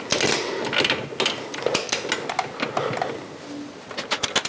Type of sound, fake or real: real